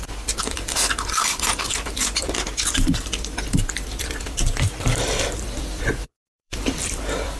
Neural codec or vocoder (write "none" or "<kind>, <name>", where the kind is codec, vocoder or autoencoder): vocoder, BigVGAN v2